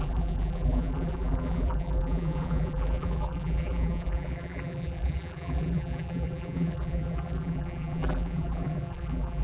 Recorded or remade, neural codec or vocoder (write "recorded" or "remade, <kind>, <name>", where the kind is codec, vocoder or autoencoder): remade, vocoder, BigVGAN v2